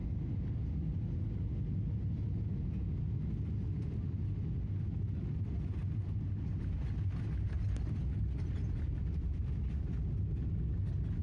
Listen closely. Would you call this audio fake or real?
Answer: real